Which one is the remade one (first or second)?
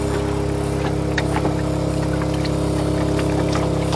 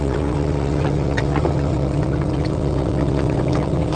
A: second